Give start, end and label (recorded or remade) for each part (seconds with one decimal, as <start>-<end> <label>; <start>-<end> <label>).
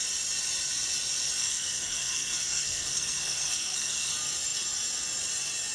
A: 0.0-1.4 recorded; 1.4-4.1 remade; 4.1-5.7 recorded